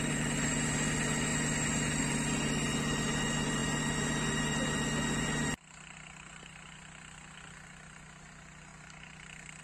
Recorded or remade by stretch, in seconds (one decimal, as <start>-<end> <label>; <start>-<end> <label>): 0.0-9.6 recorded